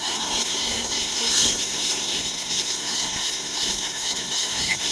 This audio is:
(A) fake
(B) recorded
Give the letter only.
A